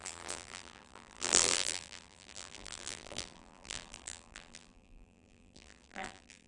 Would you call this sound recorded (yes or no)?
no